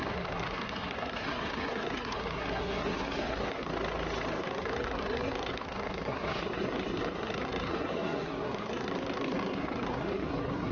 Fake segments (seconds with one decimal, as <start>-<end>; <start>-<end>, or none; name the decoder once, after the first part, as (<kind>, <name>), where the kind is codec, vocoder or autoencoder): 0.0-3.7 (codec, SNAC); 4.4-10.7